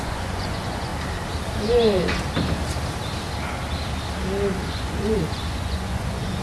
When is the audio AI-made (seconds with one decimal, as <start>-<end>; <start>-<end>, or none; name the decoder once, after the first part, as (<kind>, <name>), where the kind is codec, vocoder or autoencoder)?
0.0-0.9 (vocoder, Vocos); 4.7-6.4